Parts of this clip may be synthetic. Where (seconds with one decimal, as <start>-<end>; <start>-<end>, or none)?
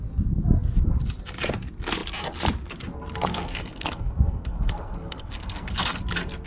3.3-6.0